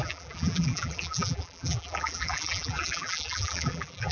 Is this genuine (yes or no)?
no